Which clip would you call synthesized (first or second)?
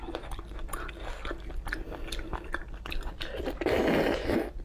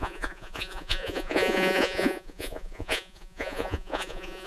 second